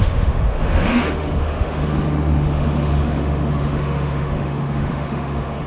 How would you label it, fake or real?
fake